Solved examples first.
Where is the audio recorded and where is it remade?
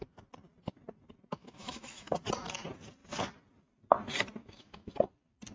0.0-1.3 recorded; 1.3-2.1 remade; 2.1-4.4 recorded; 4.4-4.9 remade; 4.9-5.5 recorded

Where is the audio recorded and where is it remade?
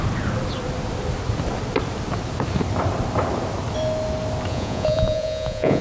0.0-4.5 recorded; 4.5-5.8 remade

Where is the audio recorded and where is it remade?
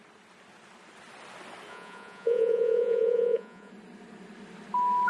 0.0-1.7 recorded; 1.7-3.7 remade; 3.7-5.1 recorded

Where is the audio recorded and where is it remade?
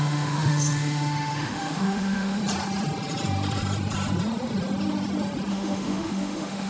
0.0-2.4 remade; 2.4-5.5 recorded; 5.5-6.7 remade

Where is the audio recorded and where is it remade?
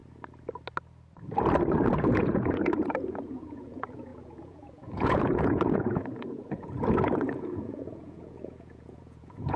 0.0-1.9 recorded; 1.9-9.6 remade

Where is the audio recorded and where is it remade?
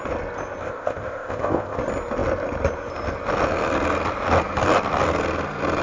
0.0-0.6 recorded; 0.6-1.8 remade; 1.8-5.8 recorded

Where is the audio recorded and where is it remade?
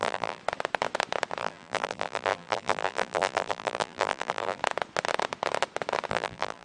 0.0-0.4 remade; 0.4-1.4 recorded; 1.4-4.6 remade; 4.6-6.1 recorded; 6.1-6.6 remade